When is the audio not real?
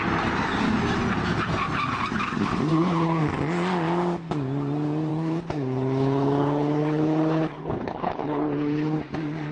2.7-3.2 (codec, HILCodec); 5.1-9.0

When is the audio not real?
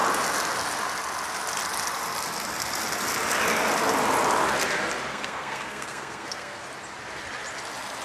5.1-6.6 (codec, SNAC)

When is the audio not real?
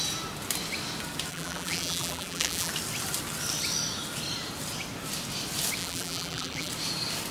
1.3-2.7 (vocoder, BigVGAN v2); 5.8-6.7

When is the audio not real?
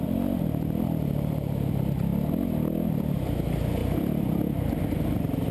0.0-1.7 (vocoder, BigVGAN v2); 3.8-4.4